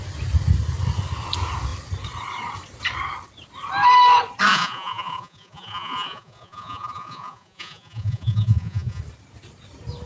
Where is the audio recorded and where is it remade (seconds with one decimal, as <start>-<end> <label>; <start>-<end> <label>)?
0.0-4.5 recorded; 4.5-9.0 remade; 9.0-10.1 recorded